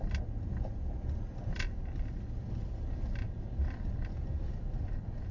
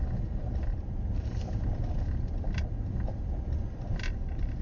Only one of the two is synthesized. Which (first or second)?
second